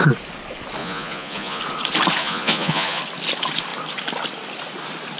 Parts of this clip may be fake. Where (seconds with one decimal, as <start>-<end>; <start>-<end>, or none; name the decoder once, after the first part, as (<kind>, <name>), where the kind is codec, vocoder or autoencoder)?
0.8-1.6 (vocoder, Vocos); 2.2-3.0